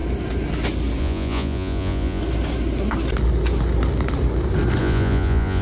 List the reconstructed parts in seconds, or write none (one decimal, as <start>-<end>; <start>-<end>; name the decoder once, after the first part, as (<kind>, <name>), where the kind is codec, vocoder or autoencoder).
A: 1.0-2.2 (vocoder, Vocos); 4.8-5.6